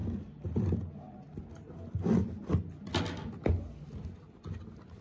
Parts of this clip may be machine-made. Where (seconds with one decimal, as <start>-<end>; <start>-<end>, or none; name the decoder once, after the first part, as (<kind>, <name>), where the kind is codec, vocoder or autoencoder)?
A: none